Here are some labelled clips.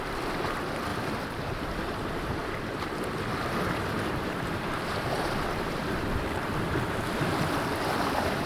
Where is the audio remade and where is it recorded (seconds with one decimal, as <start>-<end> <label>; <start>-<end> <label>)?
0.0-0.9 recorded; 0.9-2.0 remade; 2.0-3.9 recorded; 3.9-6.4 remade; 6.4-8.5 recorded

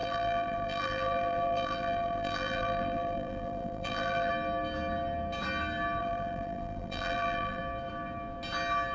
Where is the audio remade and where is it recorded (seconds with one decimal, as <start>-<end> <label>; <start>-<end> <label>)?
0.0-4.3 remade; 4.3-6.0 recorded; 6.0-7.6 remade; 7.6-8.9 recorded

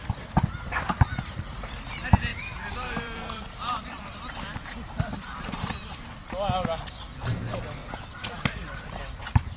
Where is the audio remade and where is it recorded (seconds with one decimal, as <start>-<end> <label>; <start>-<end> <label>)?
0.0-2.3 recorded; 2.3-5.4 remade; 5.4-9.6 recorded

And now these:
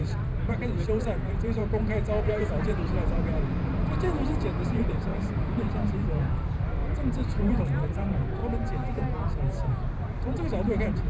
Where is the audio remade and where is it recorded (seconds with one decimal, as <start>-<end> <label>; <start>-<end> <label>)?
0.0-1.6 remade; 1.6-2.3 recorded; 2.3-6.8 remade; 6.8-7.5 recorded; 7.5-8.4 remade; 8.4-9.7 recorded; 9.7-11.1 remade